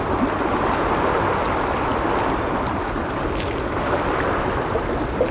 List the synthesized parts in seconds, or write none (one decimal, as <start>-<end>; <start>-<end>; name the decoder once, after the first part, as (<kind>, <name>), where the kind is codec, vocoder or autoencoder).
none